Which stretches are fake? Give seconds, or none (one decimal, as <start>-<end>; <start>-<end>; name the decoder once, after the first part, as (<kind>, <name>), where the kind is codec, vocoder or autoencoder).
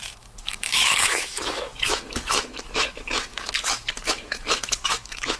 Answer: 0.0-5.4 (autoencoder, DAC-VAE)